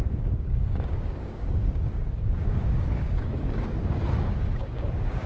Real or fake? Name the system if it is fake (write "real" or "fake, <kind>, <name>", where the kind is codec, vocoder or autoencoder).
fake, codec, DAC